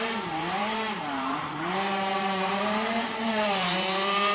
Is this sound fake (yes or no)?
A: yes